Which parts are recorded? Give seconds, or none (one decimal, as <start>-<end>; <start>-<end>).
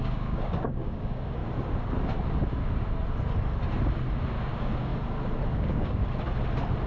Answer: 1.4-4.5; 4.9-5.5; 6.0-6.9